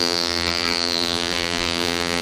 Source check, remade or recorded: remade